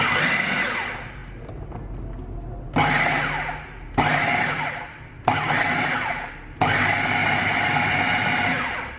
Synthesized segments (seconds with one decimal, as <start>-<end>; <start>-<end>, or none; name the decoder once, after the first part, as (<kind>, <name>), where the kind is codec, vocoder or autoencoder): none